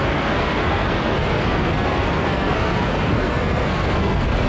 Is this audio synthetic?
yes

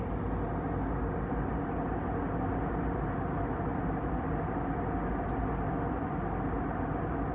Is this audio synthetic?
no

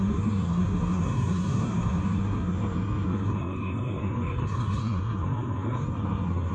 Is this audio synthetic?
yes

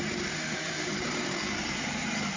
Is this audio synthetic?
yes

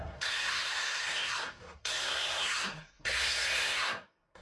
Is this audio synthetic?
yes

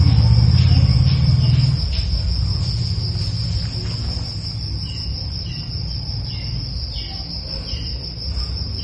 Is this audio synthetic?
no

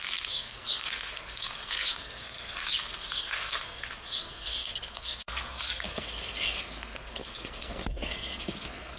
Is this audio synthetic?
yes